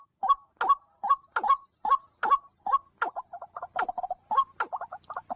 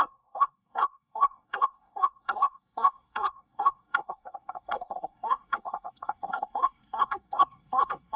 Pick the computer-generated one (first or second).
second